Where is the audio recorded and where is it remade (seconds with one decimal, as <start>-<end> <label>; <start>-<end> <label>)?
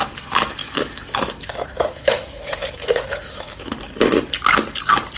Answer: 0.0-0.6 recorded; 0.6-3.7 remade; 3.7-5.2 recorded